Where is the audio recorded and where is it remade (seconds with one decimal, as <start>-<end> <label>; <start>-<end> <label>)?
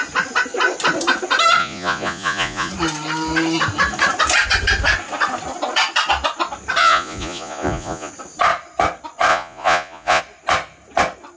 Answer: 0.0-1.6 recorded; 1.6-2.7 remade; 2.7-6.8 recorded; 6.8-8.1 remade; 8.1-9.3 recorded; 9.3-10.2 remade; 10.2-11.4 recorded